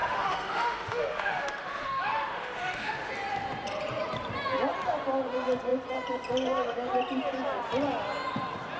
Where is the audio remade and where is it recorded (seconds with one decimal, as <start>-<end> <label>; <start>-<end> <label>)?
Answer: 0.0-3.1 remade; 3.1-8.8 recorded